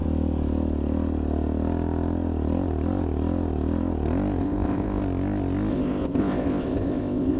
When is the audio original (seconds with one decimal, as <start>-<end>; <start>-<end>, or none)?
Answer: 0.0-4.4; 5.0-5.7